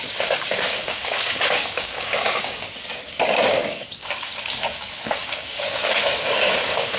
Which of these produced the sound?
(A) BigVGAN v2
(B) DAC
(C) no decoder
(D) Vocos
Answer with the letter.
B